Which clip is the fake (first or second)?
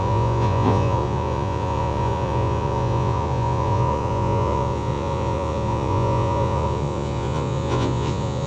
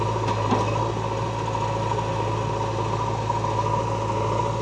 first